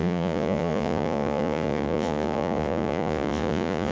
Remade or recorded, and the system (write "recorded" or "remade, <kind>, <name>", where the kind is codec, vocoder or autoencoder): remade, vocoder, Vocos